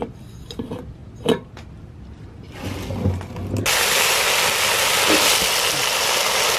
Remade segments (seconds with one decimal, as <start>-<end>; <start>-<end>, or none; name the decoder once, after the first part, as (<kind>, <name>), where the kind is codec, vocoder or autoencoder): none